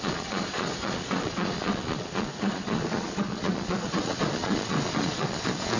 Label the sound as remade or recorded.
remade